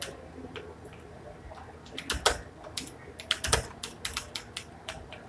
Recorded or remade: recorded